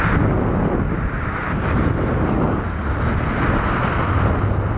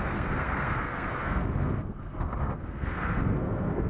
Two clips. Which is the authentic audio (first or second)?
first